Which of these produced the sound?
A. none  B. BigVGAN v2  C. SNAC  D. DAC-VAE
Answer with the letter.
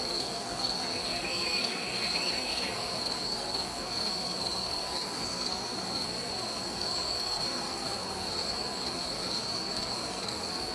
C